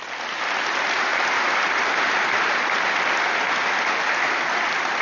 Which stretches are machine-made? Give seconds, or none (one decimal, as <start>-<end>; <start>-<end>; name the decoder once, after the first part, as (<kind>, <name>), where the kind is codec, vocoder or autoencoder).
none